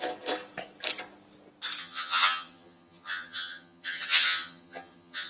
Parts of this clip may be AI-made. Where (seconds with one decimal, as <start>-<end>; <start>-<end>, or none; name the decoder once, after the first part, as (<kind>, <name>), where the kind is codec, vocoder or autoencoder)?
1.8-5.3 (vocoder, HiFi-GAN)